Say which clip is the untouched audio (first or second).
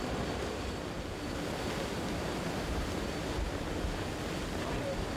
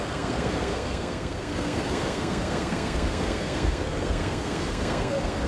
first